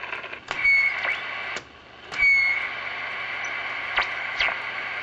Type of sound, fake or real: real